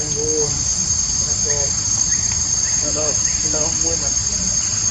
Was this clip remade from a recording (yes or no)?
no